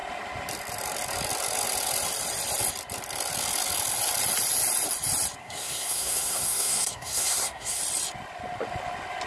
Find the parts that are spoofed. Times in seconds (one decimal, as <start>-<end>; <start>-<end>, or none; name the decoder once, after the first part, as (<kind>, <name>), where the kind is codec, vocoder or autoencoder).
5.4-7.8 (codec, SNAC)